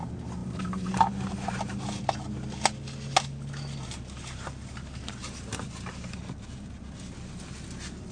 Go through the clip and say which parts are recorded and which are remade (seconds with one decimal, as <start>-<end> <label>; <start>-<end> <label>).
0.0-0.4 recorded; 0.4-2.0 remade; 2.0-5.2 recorded; 5.2-6.2 remade; 6.2-8.1 recorded